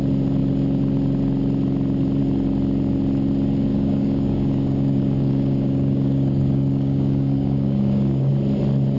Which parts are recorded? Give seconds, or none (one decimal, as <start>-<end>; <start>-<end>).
0.0-3.7; 8.3-9.0